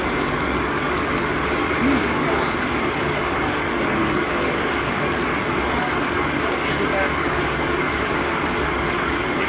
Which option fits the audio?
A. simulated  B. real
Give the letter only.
A